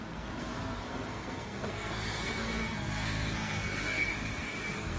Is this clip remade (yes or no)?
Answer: yes